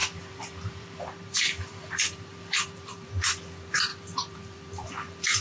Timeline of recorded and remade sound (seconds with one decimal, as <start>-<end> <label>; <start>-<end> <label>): 0.0-3.1 remade; 3.1-3.9 recorded; 3.9-5.4 remade